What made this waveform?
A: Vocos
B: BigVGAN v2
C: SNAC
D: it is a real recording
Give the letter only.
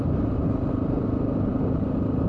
D